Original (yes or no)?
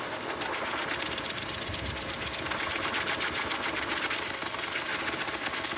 no